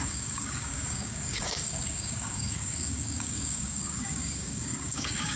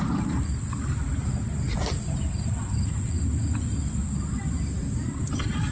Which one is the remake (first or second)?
first